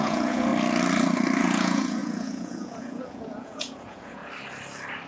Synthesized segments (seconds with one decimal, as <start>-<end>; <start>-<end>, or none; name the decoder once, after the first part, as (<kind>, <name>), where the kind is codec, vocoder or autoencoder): 0.0-0.5 (vocoder, Vocos); 1.4-4.2

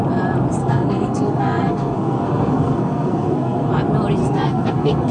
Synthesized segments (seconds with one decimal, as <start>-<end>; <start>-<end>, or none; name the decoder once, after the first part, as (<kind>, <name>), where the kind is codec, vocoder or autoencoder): 0.6-3.7 (codec, SNAC); 4.2-5.1

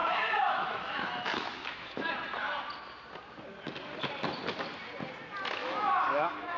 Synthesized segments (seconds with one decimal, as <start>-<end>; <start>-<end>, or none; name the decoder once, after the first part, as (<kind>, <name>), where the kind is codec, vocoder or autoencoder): 0.0-2.1 (autoencoder, DAC-VAE); 5.6-6.6

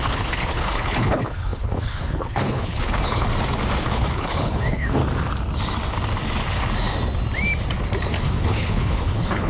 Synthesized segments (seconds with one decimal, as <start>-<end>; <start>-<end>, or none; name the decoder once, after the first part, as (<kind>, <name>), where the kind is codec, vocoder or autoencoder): 0.0-3.3 (codec, HILCodec); 3.8-5.0; 8.2-9.5